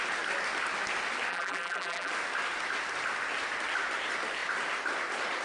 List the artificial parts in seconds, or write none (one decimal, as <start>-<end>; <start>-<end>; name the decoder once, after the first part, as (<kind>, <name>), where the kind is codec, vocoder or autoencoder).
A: 1.3-2.1 (vocoder, BigVGAN v2)